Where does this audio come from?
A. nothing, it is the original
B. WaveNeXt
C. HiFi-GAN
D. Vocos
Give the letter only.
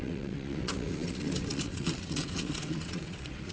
B